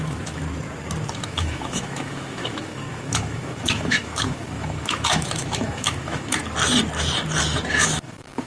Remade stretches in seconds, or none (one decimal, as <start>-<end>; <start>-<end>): 0.0-0.4; 1.1-6.4; 7.7-8.5